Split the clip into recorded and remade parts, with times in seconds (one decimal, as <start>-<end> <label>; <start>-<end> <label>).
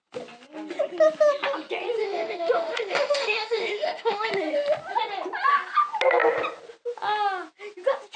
0.0-2.0 recorded; 2.0-4.3 remade; 4.3-8.2 recorded